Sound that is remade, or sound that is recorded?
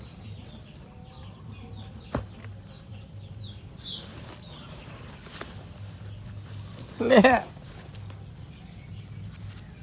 recorded